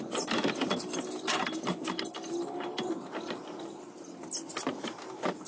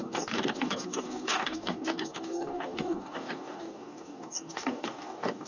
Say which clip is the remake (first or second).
second